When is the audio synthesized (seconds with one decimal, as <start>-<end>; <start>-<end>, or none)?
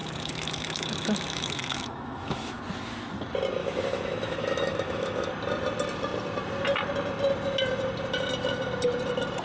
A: 0.0-2.6; 3.6-5.3